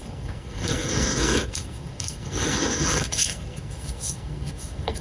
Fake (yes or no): yes